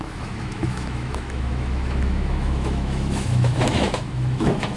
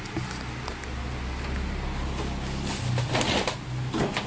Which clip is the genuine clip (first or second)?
second